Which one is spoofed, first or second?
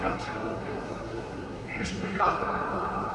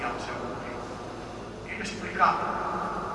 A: first